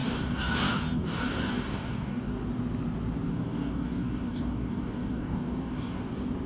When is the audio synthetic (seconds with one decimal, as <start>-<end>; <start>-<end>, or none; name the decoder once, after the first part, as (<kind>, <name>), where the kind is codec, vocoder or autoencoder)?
0.0-2.4 (codec, DAC); 3.3-6.1